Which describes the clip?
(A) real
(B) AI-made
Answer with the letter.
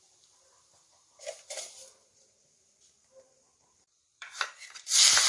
B